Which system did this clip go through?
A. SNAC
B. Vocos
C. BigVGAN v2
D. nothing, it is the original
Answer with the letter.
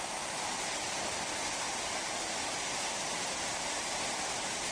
D